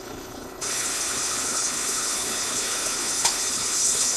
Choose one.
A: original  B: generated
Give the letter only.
B